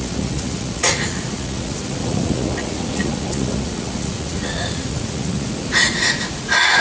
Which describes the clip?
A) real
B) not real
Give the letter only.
B